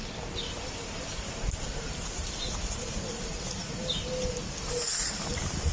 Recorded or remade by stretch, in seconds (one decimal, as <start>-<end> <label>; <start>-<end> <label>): 0.0-5.7 recorded